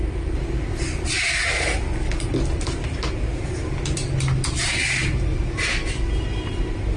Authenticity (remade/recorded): recorded